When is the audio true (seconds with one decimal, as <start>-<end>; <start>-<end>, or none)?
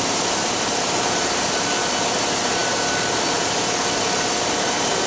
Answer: 0.0-5.1